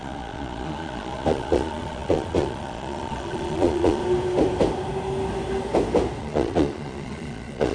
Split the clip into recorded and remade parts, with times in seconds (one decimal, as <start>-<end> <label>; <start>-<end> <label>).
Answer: 0.0-4.0 remade; 4.0-6.2 recorded; 6.2-7.7 remade

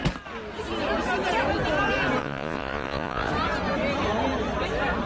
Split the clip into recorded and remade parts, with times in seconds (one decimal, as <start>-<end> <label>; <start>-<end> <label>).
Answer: 0.0-2.2 recorded; 2.2-3.3 remade; 3.3-5.1 recorded

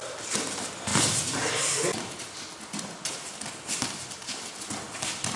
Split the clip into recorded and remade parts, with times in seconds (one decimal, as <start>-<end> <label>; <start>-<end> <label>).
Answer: 0.0-5.4 recorded

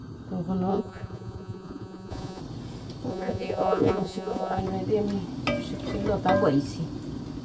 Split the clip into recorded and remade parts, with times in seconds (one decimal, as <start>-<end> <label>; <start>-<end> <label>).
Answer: 0.0-0.7 recorded; 0.7-2.4 remade; 2.4-3.1 recorded; 3.1-4.6 remade; 4.6-7.4 recorded